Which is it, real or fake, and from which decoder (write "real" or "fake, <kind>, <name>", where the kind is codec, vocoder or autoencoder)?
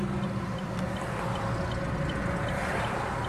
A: real